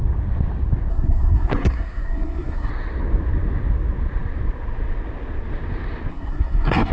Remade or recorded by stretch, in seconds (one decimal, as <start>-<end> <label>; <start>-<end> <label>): 0.0-0.9 recorded; 0.9-2.7 remade; 2.7-6.1 recorded; 6.1-6.9 remade

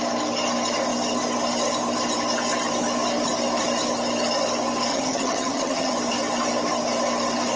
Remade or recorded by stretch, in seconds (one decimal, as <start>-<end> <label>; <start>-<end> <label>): 0.0-4.9 recorded; 4.9-5.9 remade; 5.9-7.6 recorded

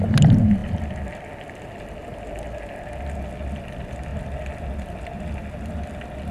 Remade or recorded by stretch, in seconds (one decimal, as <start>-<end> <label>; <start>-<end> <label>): 0.0-4.1 recorded; 4.1-4.6 remade; 4.6-6.3 recorded

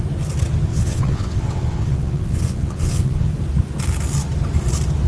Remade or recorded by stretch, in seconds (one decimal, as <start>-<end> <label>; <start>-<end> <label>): 0.0-0.7 recorded; 0.7-3.3 remade; 3.3-5.1 recorded

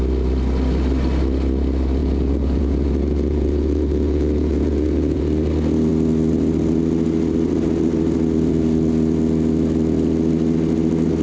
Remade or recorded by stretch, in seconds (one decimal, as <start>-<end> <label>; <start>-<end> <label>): 0.0-2.0 recorded; 2.0-5.2 remade; 5.2-11.2 recorded

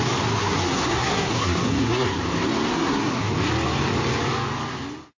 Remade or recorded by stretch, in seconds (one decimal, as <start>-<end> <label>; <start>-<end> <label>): 0.0-0.4 recorded; 0.4-2.2 remade; 2.2-2.7 recorded; 2.7-3.3 remade; 3.3-5.2 recorded

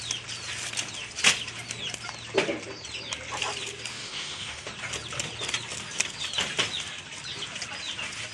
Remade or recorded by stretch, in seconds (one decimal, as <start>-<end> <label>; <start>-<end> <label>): 0.0-3.9 recorded; 3.9-4.7 remade; 4.7-8.3 recorded

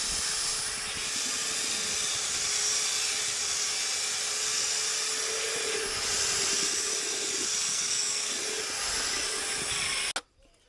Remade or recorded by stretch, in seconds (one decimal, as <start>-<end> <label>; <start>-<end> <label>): 0.0-7.7 recorded; 7.7-8.3 remade; 8.3-10.7 recorded